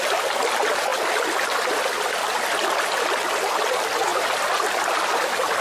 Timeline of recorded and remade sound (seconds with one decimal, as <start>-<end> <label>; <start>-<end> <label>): 0.0-5.6 recorded